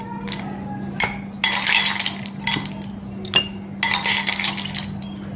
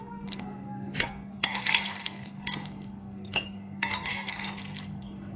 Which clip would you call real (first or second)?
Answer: first